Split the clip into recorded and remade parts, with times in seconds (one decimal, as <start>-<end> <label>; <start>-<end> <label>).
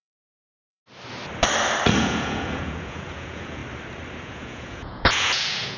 0.0-0.8 remade; 0.8-2.0 recorded; 2.0-3.6 remade; 3.6-4.2 recorded; 4.2-5.8 remade